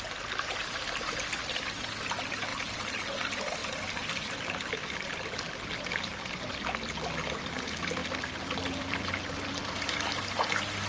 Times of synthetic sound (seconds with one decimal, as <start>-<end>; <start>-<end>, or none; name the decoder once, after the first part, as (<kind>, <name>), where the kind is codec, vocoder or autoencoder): 2.5-3.0 (vocoder, BigVGAN v2); 8.0-9.5